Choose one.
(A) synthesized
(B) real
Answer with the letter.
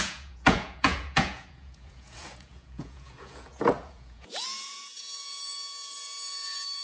A